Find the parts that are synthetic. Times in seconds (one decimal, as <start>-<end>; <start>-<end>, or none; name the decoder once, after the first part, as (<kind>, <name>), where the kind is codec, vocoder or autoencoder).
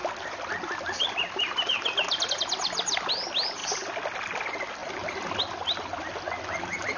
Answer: none